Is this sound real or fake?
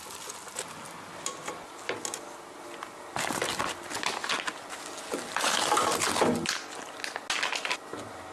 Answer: real